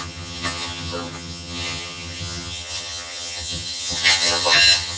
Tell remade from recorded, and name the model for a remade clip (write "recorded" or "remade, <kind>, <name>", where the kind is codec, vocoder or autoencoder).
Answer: remade, vocoder, HiFi-GAN